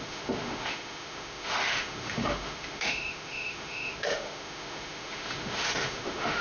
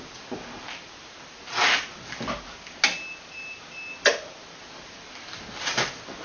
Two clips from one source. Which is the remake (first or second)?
first